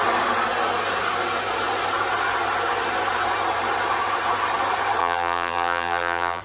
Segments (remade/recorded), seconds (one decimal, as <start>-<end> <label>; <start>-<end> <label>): 0.0-5.0 recorded; 5.0-6.4 remade